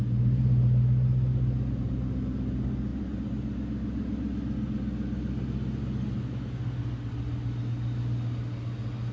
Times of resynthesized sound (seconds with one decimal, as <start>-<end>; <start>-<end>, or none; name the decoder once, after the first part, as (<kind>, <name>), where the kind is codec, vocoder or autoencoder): none